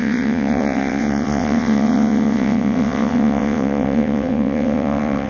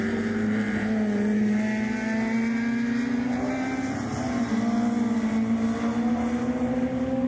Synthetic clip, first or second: first